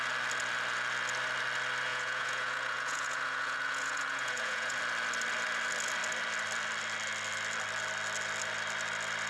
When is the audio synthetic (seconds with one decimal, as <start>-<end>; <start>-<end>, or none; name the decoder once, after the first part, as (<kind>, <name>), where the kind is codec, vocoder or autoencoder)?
1.9-4.8 (vocoder, Vocos)